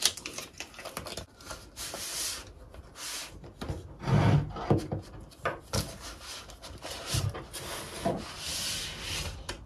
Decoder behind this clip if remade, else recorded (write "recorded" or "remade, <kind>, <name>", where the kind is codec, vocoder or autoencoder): recorded